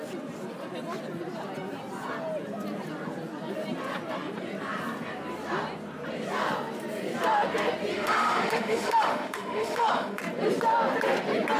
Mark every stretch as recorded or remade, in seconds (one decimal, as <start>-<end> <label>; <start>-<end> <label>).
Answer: 0.0-7.9 recorded; 7.9-10.2 remade; 10.2-11.6 recorded